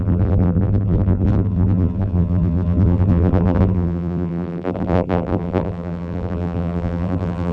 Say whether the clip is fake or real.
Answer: fake